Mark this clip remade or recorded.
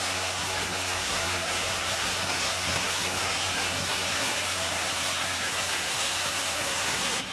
remade